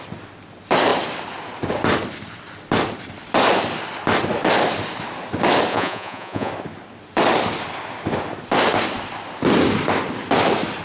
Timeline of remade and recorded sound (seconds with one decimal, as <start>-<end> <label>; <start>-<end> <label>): 0.0-5.7 recorded; 5.7-6.5 remade; 6.5-10.8 recorded